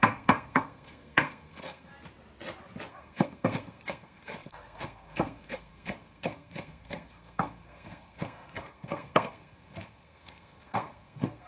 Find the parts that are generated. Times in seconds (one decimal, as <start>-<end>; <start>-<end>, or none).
0.0-1.9; 2.9-11.5